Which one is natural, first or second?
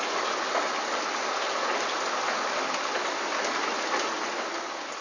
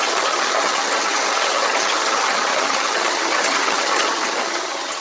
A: first